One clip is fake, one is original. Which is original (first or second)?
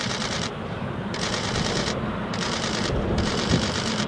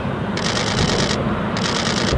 second